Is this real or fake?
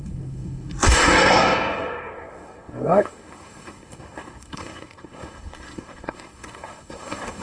fake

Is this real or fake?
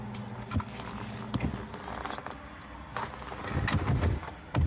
real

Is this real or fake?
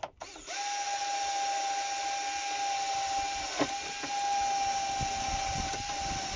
real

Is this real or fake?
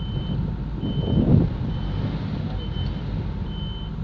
real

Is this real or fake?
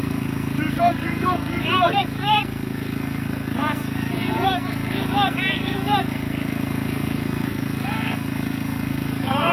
fake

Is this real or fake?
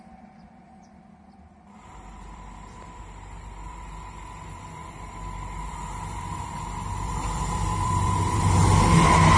fake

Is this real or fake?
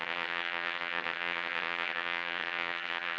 fake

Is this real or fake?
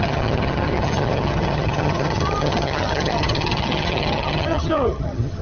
fake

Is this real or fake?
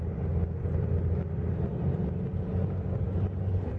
real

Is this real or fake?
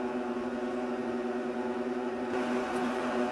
fake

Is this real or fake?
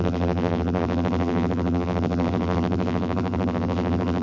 fake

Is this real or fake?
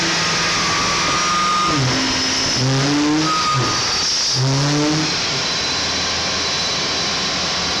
real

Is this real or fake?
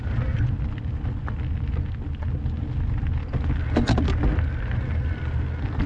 real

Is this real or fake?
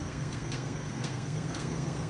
fake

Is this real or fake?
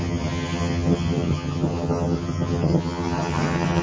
fake